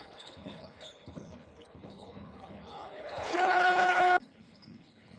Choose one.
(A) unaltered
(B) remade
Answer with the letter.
B